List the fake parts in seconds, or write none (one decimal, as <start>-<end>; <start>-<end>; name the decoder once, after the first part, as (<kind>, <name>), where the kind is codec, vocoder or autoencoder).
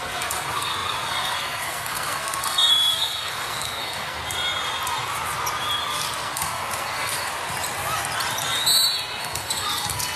0.0-4.2 (codec, SNAC); 5.9-7.3; 9.2-10.2